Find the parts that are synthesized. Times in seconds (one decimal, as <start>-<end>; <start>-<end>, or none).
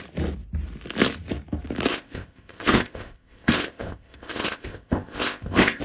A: 1.9-5.8